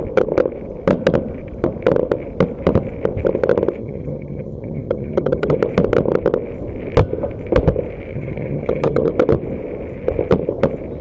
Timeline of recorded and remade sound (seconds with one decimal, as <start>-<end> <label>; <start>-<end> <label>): 0.0-3.8 recorded; 3.8-5.6 remade; 5.6-8.1 recorded; 8.1-9.1 remade; 9.1-11.0 recorded